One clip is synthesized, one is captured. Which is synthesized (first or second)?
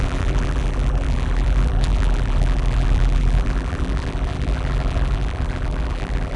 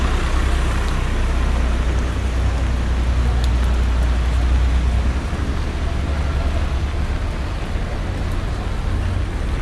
first